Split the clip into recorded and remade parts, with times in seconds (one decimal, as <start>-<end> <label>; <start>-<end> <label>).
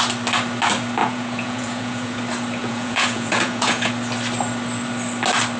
0.0-1.0 recorded; 1.0-2.2 remade; 2.2-2.6 recorded; 2.6-3.9 remade; 3.9-5.6 recorded